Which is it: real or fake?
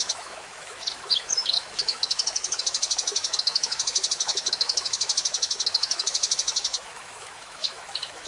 fake